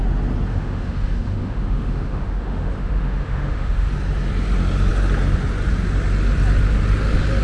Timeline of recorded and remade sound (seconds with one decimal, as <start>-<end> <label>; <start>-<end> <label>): 0.0-0.5 recorded; 0.5-3.9 remade; 3.9-7.4 recorded

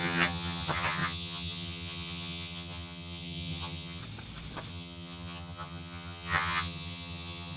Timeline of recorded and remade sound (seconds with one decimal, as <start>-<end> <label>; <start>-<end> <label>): 0.0-4.0 remade; 4.0-4.7 recorded; 4.7-7.6 remade

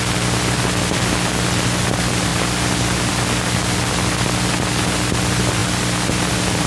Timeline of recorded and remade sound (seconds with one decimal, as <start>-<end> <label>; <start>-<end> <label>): 0.0-6.7 recorded

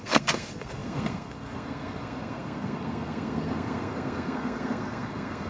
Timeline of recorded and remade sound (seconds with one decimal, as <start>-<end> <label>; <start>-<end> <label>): 0.0-5.5 remade